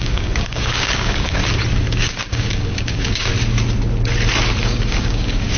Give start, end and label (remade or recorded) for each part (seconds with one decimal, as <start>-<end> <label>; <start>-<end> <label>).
0.0-1.4 remade; 1.4-1.9 recorded; 1.9-3.3 remade; 3.3-4.6 recorded; 4.6-5.6 remade